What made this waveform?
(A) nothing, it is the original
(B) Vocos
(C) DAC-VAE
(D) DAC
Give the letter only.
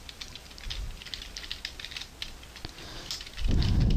A